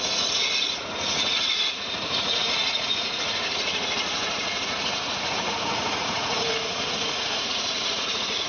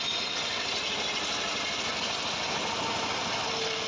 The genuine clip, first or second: second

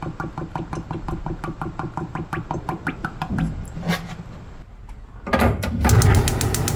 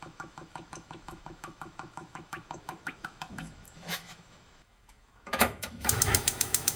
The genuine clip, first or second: first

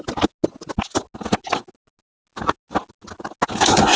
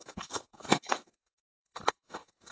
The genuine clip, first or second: first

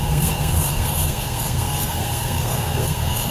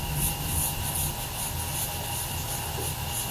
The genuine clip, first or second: second